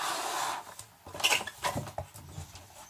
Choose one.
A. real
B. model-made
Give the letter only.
A